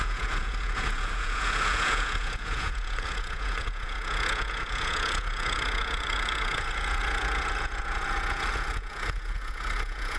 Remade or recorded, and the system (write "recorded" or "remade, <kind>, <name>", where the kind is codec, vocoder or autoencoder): remade, vocoder, Vocos